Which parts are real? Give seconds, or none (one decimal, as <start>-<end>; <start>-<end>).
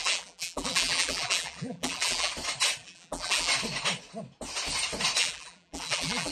2.3-2.8; 3.5-5.2